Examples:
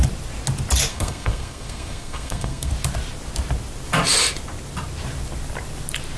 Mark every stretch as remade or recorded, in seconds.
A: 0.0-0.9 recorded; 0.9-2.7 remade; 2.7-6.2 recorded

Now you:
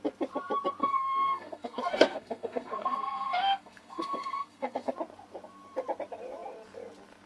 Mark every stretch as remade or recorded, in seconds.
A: 0.0-0.8 recorded; 0.8-4.9 remade; 4.9-7.3 recorded

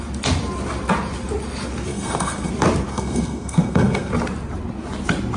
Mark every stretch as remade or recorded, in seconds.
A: 0.0-1.9 recorded; 1.9-2.5 remade; 2.5-2.9 recorded; 2.9-4.1 remade; 4.1-5.4 recorded

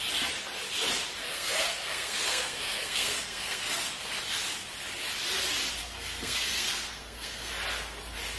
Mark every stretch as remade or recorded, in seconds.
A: 0.0-1.2 recorded; 1.2-4.2 remade; 4.2-5.8 recorded; 5.8-7.5 remade; 7.5-8.4 recorded

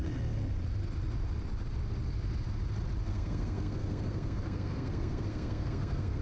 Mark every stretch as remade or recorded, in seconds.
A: 0.0-3.1 recorded; 3.1-6.2 remade

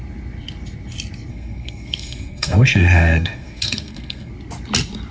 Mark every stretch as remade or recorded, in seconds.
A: 0.0-1.3 recorded; 1.3-4.3 remade; 4.3-5.1 recorded